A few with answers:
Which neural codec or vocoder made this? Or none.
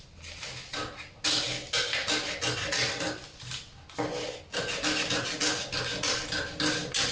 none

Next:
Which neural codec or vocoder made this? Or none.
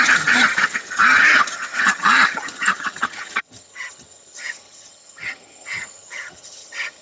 vocoder, HiFi-GAN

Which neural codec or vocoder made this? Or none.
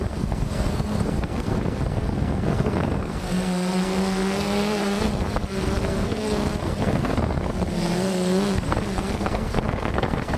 codec, SNAC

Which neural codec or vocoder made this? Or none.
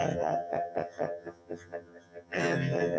vocoder, HiFi-GAN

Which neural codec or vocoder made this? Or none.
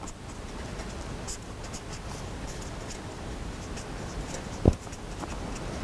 none